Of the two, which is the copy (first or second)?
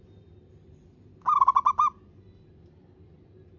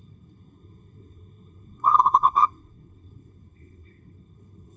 second